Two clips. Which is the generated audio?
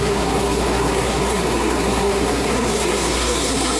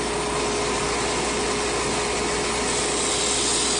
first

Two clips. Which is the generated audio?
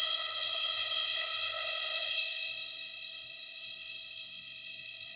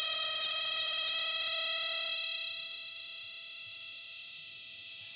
first